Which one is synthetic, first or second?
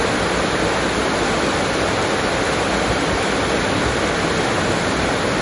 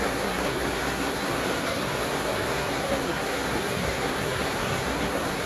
second